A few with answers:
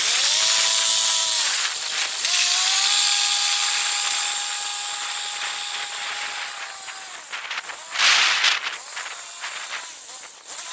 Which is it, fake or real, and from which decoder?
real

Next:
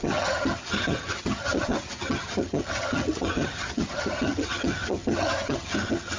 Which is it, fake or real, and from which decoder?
fake, vocoder, HiFi-GAN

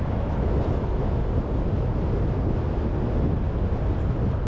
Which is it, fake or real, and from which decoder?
real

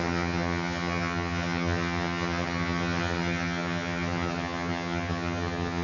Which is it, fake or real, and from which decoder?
fake, vocoder, HiFi-GAN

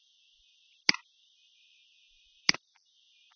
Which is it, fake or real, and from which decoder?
real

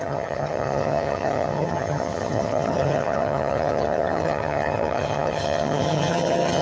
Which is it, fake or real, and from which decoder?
fake, vocoder, HiFi-GAN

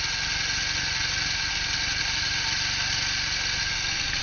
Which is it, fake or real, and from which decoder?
real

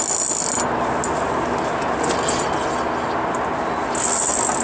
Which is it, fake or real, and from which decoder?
real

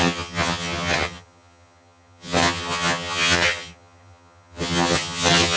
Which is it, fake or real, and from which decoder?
fake, vocoder, HiFi-GAN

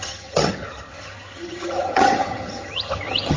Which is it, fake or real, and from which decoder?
fake, vocoder, HiFi-GAN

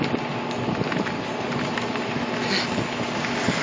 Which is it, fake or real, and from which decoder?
real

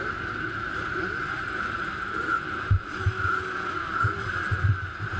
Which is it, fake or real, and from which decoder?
real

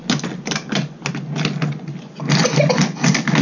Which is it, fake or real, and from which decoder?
real